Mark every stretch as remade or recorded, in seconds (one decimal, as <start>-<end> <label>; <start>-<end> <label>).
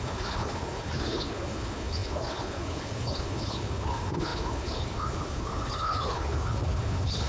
0.0-7.3 remade